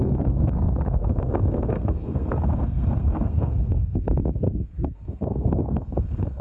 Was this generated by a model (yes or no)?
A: yes